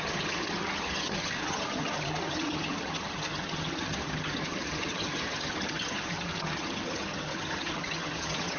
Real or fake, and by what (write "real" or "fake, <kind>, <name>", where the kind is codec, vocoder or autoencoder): fake, vocoder, HiFi-GAN